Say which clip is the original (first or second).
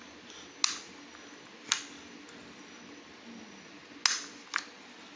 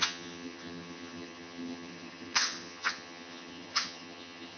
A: first